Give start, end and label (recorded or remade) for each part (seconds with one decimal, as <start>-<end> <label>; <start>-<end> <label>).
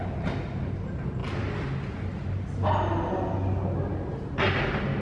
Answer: 0.0-5.0 recorded